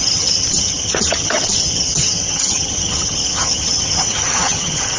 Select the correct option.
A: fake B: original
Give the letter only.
A